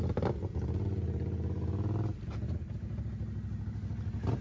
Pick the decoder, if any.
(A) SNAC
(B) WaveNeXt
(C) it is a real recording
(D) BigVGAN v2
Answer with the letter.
C